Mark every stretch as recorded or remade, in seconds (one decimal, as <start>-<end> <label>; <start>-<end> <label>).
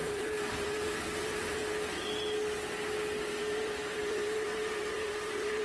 0.0-1.6 remade; 1.6-3.3 recorded; 3.3-5.6 remade